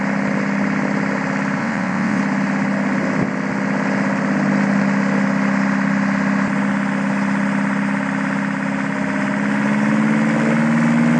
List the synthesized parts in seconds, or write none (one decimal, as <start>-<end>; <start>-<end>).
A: 1.6-2.2